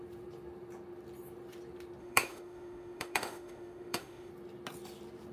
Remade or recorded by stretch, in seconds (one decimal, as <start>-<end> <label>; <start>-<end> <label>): 0.0-2.0 recorded; 2.0-4.3 remade; 4.3-5.3 recorded